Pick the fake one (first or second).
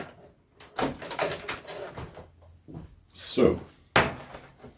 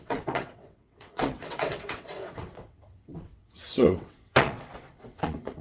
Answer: second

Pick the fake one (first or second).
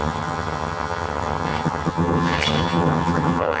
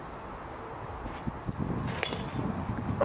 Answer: first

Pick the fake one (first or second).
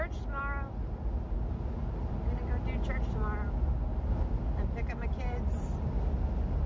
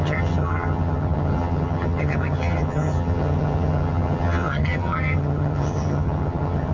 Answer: second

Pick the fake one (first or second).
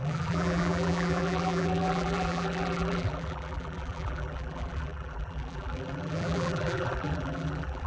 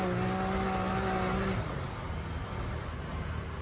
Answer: first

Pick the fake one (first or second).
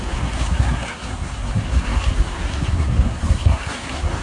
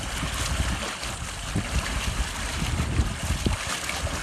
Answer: first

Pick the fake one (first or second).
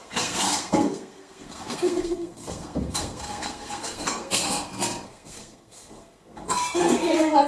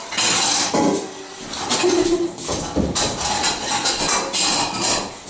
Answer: first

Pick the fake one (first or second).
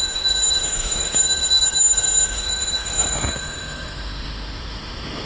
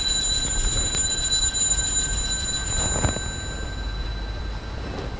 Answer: first